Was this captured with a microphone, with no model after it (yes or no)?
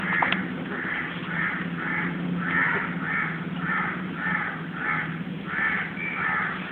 yes